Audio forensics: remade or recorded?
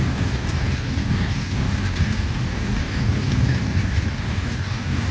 remade